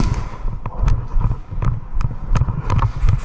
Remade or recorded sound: recorded